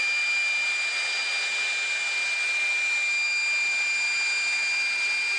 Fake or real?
real